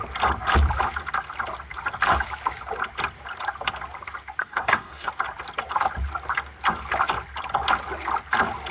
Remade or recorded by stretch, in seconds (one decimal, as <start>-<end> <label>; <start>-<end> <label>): 0.0-4.4 recorded; 4.4-5.1 remade; 5.1-8.7 recorded